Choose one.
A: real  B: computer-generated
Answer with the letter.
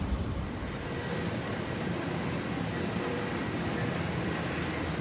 B